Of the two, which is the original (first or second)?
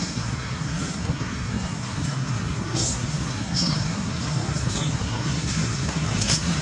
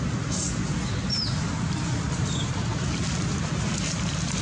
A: second